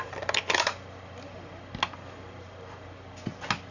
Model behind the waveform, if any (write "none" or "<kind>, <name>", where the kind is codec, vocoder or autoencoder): none